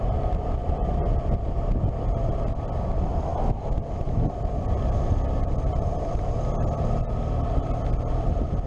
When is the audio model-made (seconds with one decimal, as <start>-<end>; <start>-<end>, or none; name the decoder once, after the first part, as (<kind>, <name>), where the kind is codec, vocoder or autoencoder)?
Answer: none